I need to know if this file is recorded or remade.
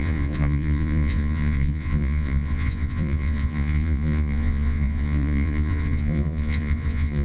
remade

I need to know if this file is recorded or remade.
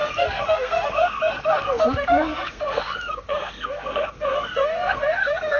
remade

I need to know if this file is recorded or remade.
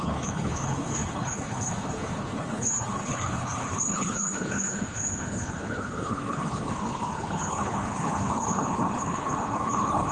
remade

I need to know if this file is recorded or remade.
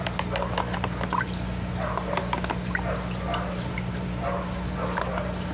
recorded